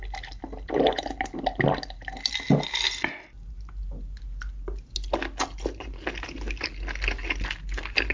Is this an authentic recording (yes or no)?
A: yes